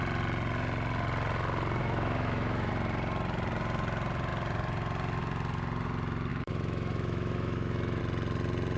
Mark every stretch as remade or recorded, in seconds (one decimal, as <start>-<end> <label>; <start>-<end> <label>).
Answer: 0.0-1.8 recorded; 1.8-2.7 remade; 2.7-6.3 recorded; 6.3-8.0 remade; 8.0-8.8 recorded